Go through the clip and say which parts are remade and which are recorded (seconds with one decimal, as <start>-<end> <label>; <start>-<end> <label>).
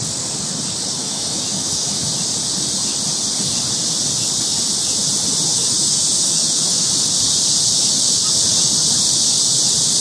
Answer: 0.0-1.0 recorded; 1.0-2.2 remade; 2.2-5.5 recorded; 5.5-6.9 remade; 6.9-10.0 recorded